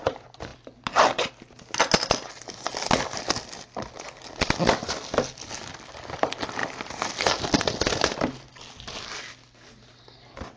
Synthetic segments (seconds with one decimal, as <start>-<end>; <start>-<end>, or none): none